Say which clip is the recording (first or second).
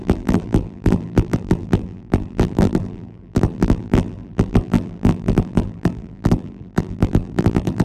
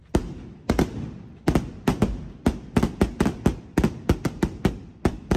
second